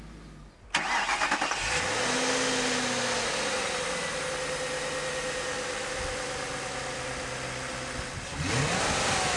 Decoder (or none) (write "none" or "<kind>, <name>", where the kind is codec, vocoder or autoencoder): none